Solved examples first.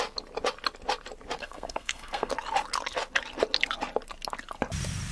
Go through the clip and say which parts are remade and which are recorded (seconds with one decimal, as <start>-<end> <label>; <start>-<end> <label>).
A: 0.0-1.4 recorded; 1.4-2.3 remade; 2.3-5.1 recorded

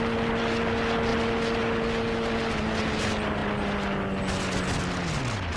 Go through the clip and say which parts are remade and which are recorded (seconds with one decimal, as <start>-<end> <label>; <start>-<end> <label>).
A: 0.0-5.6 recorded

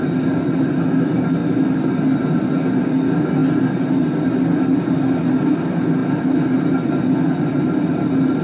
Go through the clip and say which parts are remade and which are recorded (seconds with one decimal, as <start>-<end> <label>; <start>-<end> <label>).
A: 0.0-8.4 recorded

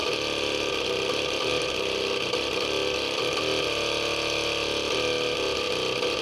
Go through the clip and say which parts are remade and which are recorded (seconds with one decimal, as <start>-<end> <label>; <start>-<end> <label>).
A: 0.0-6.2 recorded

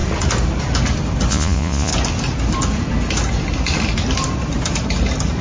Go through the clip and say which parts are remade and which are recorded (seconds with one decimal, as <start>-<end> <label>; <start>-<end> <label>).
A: 0.0-1.3 recorded; 1.3-1.9 remade; 1.9-5.4 recorded